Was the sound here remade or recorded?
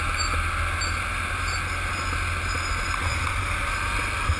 recorded